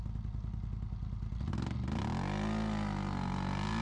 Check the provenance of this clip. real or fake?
real